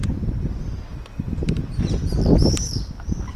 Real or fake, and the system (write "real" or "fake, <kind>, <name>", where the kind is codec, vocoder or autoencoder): real